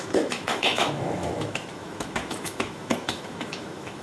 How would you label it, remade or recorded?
remade